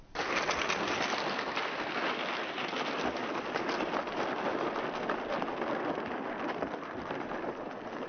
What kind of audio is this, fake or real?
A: real